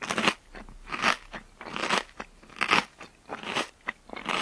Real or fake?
real